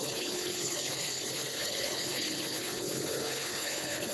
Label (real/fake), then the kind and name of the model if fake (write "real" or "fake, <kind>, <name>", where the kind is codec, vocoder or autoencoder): fake, codec, HILCodec